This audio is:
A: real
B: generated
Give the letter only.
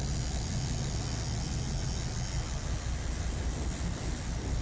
A